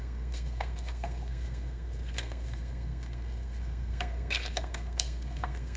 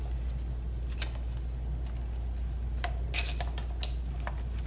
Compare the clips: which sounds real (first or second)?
second